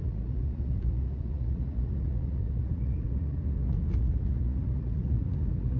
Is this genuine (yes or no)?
no